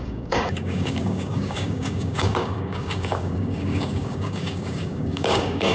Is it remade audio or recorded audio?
remade